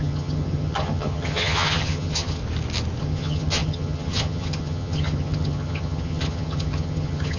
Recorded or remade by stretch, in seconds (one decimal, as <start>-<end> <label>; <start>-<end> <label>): 0.0-2.4 remade; 2.4-3.0 recorded; 3.0-7.4 remade